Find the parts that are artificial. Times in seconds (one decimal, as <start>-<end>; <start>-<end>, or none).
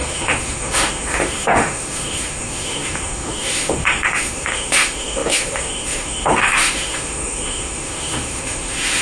0.0-9.0